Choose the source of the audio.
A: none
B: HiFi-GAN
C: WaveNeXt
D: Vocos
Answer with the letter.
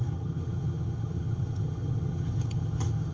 B